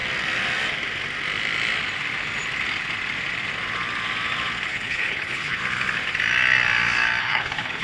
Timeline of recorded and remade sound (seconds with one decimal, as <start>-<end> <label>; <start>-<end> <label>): 0.0-4.7 recorded; 4.7-5.6 remade; 5.6-7.2 recorded; 7.2-7.8 remade

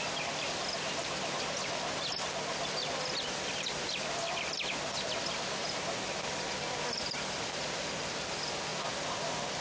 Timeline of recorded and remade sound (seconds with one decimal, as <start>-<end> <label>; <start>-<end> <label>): 0.0-9.6 recorded

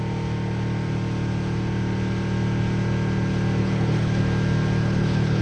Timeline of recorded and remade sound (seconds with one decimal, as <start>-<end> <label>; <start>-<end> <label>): 0.0-3.6 recorded; 3.6-4.2 remade; 4.2-4.8 recorded; 4.8-5.4 remade